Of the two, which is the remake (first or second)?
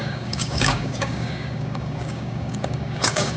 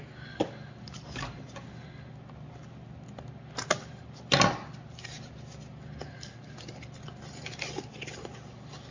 first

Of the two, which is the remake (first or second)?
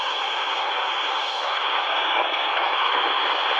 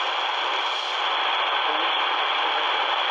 first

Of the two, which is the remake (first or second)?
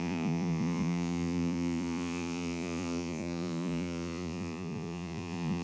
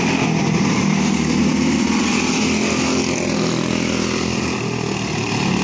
first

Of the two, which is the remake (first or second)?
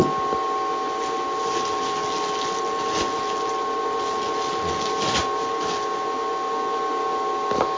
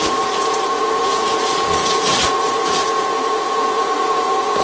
second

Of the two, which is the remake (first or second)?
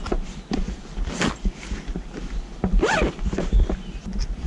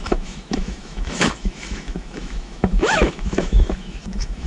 second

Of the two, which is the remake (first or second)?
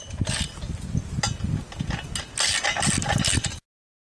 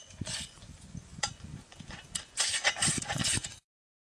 second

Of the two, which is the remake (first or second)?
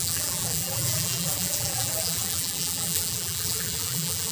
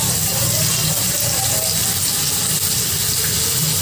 first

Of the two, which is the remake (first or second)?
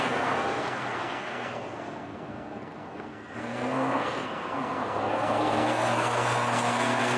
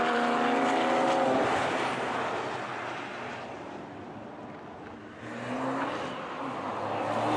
first